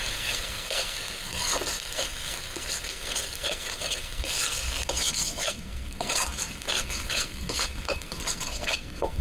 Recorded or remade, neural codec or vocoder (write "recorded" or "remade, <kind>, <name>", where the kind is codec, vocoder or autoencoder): remade, codec, SNAC